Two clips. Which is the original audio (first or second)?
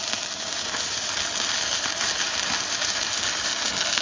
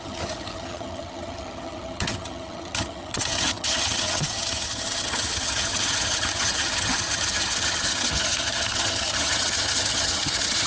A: first